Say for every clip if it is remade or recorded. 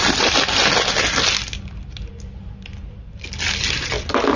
recorded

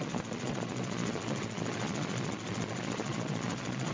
remade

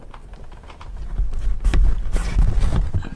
recorded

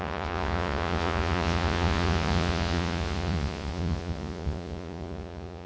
remade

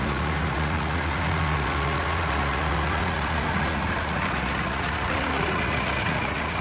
remade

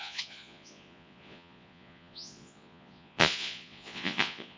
remade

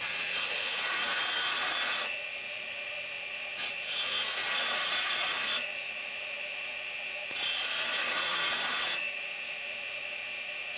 remade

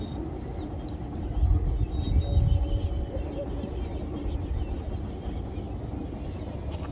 recorded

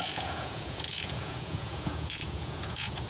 remade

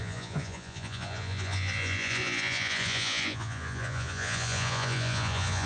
remade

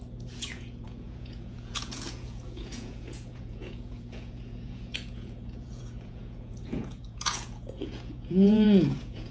remade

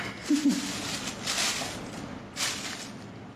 recorded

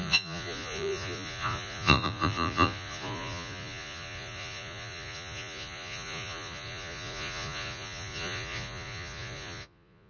remade